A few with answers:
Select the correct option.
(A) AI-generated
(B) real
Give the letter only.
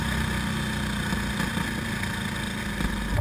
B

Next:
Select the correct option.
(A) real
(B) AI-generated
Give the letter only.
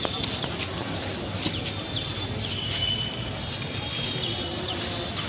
A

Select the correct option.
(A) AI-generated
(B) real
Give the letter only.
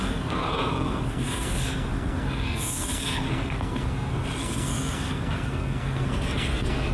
A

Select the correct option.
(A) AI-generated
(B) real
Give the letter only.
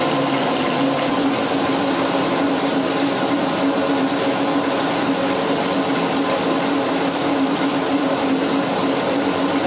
B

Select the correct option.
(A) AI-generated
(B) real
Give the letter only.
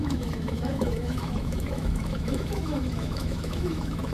A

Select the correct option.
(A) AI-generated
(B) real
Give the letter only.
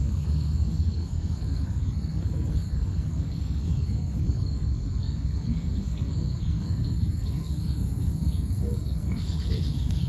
A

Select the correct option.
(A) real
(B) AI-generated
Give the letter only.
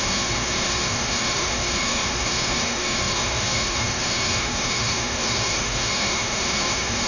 B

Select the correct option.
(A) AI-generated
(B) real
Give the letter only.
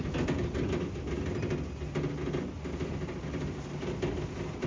B